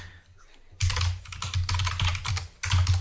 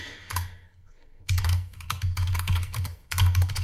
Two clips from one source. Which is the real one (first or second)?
first